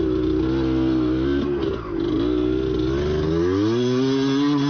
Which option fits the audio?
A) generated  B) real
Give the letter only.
B